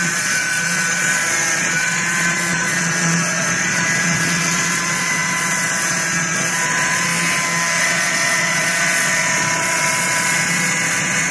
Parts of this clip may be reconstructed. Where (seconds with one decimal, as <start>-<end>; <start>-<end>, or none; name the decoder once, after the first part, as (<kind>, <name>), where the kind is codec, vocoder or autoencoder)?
0.0-7.1 (vocoder, Vocos); 7.8-11.3